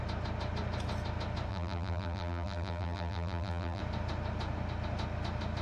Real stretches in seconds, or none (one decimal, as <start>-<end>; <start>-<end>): 0.0-1.5; 3.8-5.6